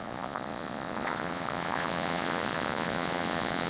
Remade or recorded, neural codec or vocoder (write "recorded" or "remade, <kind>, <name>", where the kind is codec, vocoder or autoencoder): remade, vocoder, Vocos